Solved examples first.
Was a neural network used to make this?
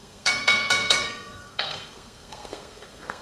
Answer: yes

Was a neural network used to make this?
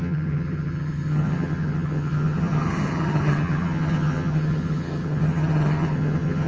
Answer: yes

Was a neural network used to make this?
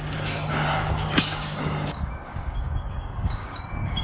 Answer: yes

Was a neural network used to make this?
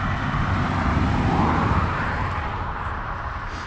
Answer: yes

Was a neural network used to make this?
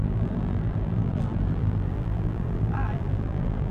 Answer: yes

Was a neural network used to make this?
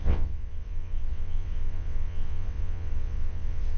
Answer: yes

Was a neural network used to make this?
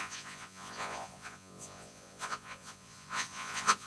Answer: yes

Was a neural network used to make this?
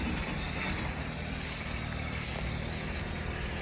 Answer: no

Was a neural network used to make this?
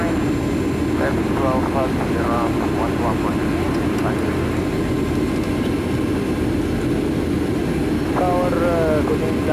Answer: no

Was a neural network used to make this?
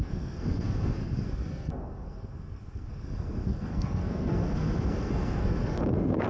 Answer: yes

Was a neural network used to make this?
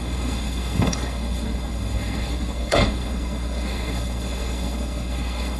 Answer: yes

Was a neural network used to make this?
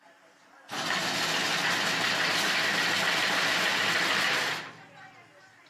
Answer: no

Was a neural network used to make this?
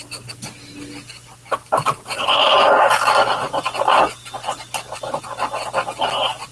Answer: no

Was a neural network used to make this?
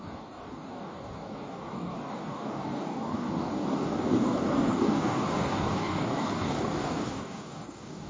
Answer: yes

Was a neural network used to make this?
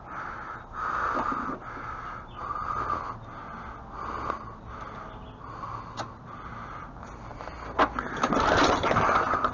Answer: no